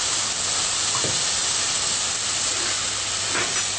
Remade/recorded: recorded